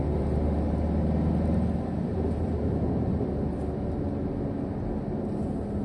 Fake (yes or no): no